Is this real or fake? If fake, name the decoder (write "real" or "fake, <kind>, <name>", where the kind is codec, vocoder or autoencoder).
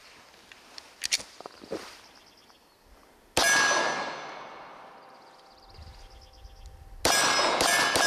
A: real